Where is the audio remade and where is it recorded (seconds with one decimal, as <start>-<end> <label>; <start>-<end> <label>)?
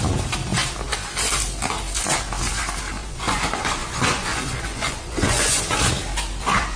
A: 0.0-3.0 recorded; 3.0-5.6 remade; 5.6-6.8 recorded